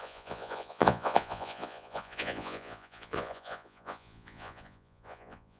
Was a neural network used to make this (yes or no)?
yes